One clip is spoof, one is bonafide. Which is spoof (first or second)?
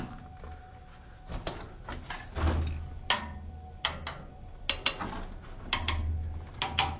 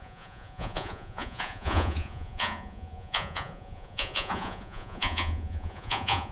second